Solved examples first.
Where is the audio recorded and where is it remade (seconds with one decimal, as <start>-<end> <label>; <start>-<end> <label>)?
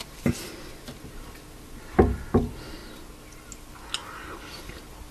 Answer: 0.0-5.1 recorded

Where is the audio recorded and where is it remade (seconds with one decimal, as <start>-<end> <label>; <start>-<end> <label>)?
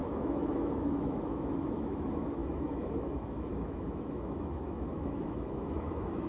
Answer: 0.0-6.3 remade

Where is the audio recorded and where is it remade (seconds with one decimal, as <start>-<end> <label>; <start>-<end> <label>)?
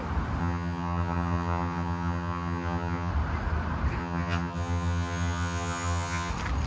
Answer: 0.0-0.4 recorded; 0.4-3.1 remade; 3.1-4.0 recorded; 4.0-6.3 remade; 6.3-6.7 recorded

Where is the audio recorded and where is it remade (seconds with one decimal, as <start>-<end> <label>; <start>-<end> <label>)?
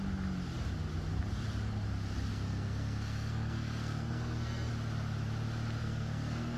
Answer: 0.0-2.3 recorded; 2.3-4.7 remade; 4.7-5.8 recorded; 5.8-6.6 remade